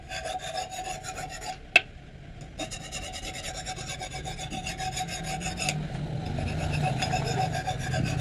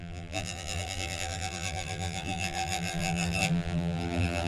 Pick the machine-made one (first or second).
second